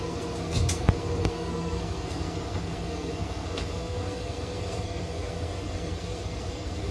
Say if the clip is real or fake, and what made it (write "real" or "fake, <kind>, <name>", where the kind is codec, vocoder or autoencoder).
fake, codec, SNAC